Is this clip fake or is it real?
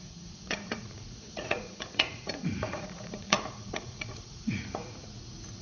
fake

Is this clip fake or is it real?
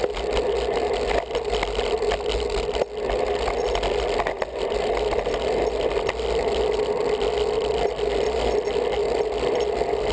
real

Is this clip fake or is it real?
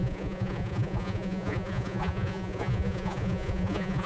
fake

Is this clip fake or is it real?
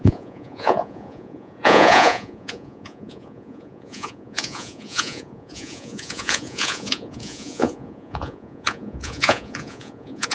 fake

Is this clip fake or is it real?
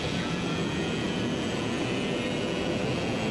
fake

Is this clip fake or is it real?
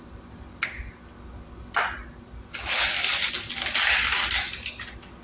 real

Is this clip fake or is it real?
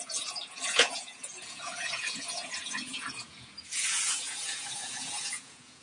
fake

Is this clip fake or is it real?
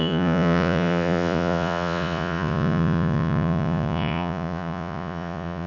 fake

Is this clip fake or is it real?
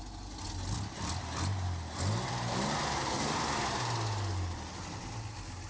real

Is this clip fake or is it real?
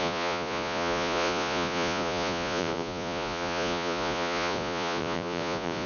fake